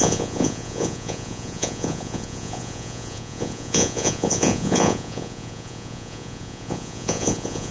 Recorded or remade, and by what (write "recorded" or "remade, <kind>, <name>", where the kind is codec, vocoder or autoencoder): remade, vocoder, Vocos